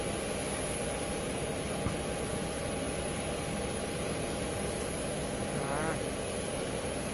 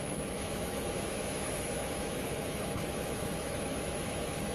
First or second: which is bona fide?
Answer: first